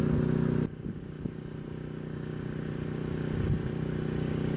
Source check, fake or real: real